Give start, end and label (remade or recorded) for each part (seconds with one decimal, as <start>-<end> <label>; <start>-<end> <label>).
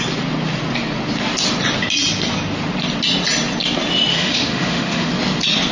0.0-4.1 recorded; 4.1-5.1 remade; 5.1-5.7 recorded